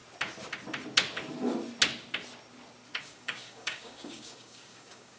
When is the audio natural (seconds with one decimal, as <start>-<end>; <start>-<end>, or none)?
0.0-3.0